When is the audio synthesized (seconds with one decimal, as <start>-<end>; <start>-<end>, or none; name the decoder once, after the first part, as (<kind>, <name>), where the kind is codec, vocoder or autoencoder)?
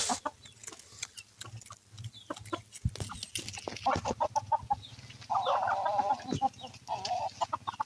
none